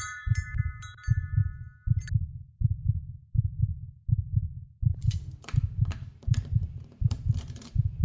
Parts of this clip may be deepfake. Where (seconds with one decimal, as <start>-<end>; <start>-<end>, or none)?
0.0-1.4; 4.9-8.0